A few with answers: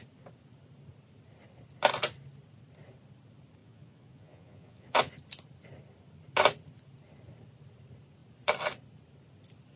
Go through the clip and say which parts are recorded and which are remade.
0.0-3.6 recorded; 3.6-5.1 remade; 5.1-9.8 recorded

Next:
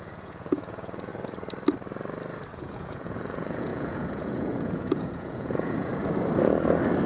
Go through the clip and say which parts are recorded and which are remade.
0.0-1.1 remade; 1.1-2.5 recorded; 2.5-5.9 remade; 5.9-7.1 recorded

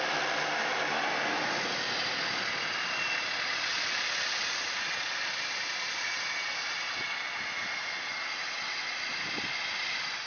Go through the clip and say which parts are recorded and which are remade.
0.0-10.3 recorded

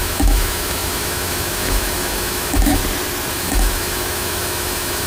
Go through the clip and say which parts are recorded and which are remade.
0.0-2.8 remade; 2.8-3.3 recorded; 3.3-5.1 remade

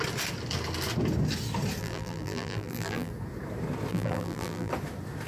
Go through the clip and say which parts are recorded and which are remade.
0.0-1.8 recorded; 1.8-3.1 remade; 3.1-3.9 recorded; 3.9-4.7 remade; 4.7-5.3 recorded

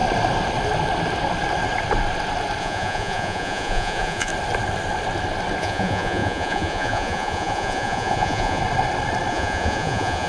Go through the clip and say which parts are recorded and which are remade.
0.0-2.6 recorded; 2.6-4.3 remade; 4.3-5.6 recorded; 5.6-8.6 remade; 8.6-9.3 recorded; 9.3-10.3 remade